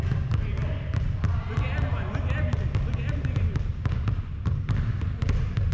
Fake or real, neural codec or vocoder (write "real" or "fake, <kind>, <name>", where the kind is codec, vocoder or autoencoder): real